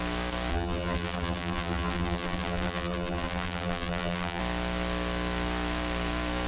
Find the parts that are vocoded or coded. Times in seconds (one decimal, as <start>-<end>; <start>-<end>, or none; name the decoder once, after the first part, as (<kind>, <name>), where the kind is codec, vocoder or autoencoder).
0.5-4.4 (vocoder, BigVGAN v2)